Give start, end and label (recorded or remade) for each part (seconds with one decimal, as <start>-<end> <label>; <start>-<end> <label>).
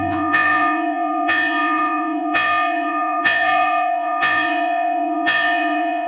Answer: 0.0-6.1 remade